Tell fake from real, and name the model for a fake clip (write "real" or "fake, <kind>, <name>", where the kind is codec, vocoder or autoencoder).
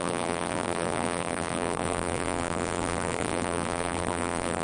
fake, vocoder, BigVGAN v2